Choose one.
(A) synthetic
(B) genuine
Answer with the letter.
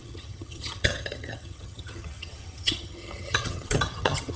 A